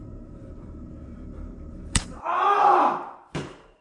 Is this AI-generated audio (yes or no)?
yes